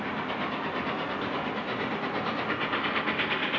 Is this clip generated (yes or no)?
no